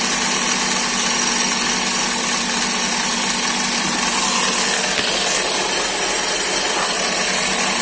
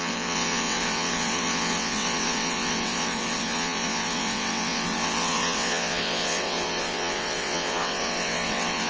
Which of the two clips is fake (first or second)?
second